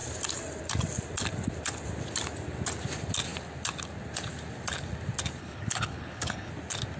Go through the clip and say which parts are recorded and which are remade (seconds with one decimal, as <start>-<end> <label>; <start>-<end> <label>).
0.0-5.4 recorded; 5.4-6.5 remade; 6.5-7.0 recorded